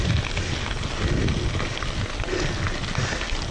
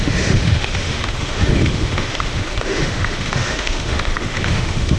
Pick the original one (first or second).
first